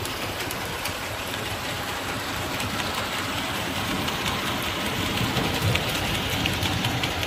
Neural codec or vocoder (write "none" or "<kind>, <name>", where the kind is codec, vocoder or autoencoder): vocoder, BigVGAN v2